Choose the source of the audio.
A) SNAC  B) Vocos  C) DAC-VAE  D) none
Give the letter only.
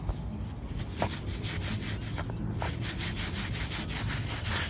D